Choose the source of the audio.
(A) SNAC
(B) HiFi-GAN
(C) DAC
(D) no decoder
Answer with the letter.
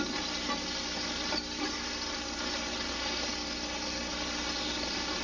D